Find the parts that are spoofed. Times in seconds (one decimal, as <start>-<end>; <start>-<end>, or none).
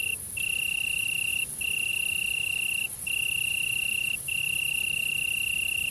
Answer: 1.3-1.9; 3.5-4.4